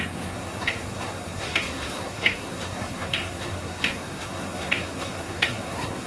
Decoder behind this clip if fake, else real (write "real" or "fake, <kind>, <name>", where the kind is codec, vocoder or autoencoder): fake, codec, SNAC